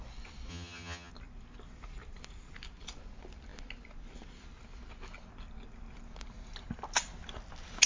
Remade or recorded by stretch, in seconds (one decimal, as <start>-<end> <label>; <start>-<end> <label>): 0.0-0.5 recorded; 0.5-1.1 remade; 1.1-7.9 recorded

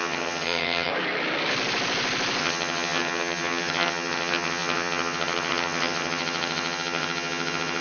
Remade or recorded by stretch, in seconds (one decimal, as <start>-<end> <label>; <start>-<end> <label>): 0.0-0.9 remade; 0.9-2.4 recorded; 2.4-7.8 remade